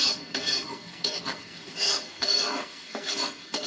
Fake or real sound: fake